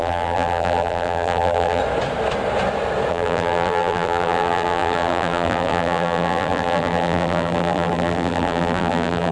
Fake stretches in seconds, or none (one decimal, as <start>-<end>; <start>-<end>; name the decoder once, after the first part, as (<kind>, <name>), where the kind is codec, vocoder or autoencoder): 0.0-1.8 (vocoder, BigVGAN v2); 3.1-9.3